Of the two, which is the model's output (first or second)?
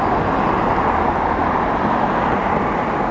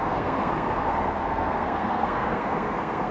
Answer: second